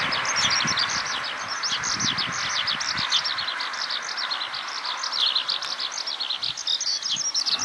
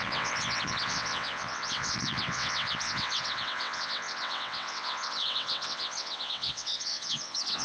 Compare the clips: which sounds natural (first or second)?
first